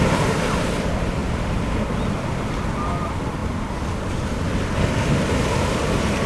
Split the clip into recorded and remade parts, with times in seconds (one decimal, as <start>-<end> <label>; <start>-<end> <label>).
0.0-6.3 recorded